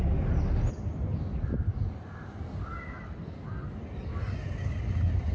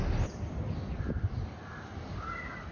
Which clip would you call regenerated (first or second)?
second